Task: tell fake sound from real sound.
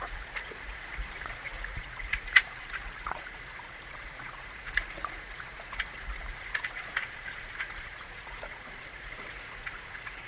fake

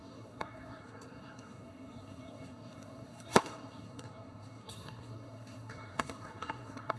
fake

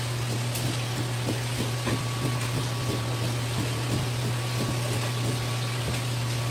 real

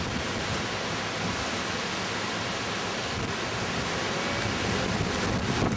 real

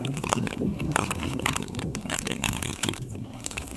fake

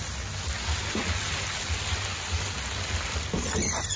real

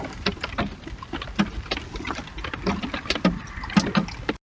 real